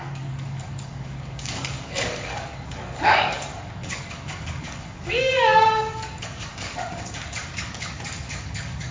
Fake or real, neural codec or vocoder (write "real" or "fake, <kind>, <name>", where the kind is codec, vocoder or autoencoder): fake, codec, DAC